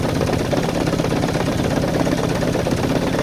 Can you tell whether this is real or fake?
real